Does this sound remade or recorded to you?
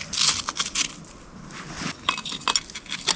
recorded